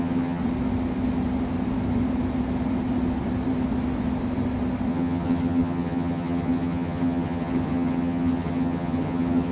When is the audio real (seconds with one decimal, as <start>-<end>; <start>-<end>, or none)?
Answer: 0.4-4.9